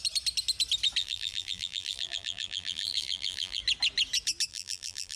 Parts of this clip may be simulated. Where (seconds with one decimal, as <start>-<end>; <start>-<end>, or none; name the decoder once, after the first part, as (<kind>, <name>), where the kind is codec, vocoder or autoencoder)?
1.0-3.6 (vocoder, BigVGAN v2); 4.5-5.2